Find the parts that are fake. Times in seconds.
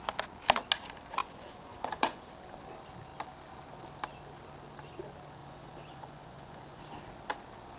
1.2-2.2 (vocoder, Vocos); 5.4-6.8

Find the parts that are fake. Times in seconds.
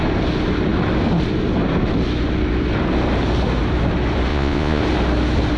4.3-4.8 (vocoder, Vocos)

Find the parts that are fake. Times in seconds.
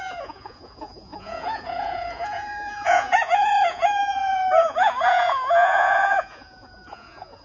0.0-7.4 (vocoder, Vocos)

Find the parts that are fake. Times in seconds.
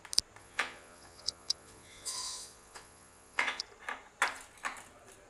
0.4-3.6 (vocoder, Vocos)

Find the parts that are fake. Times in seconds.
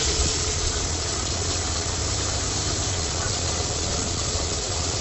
0.0-2.0 (vocoder, Vocos); 2.9-5.0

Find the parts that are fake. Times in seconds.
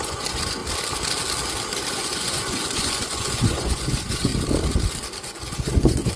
0.0-0.6 (vocoder, Vocos); 1.9-4.3; 5.2-6.2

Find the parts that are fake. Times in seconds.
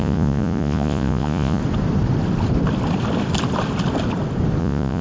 0.0-1.6 (vocoder, Vocos); 4.6-5.0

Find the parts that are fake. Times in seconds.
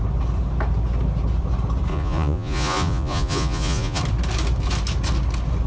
1.9-4.0 (vocoder, Vocos)